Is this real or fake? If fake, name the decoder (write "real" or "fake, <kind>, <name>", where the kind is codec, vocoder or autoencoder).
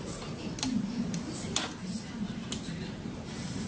real